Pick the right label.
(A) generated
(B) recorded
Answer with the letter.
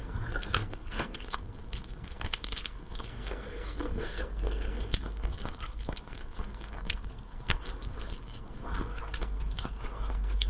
A